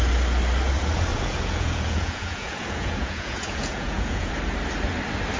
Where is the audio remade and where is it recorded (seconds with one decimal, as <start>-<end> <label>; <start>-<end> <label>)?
0.0-1.1 recorded; 1.1-4.3 remade; 4.3-5.4 recorded